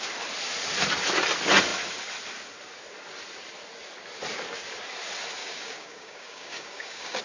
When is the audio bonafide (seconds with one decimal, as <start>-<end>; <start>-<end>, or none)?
0.0-5.4